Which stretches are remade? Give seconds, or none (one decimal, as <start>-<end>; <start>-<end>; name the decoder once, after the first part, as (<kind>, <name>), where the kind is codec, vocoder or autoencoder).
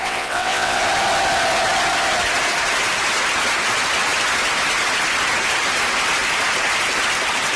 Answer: 0.0-0.8 (vocoder, WaveNeXt)